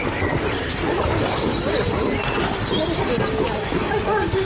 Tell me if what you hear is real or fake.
real